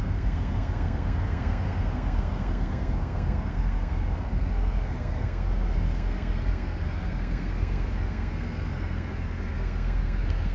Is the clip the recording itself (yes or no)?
no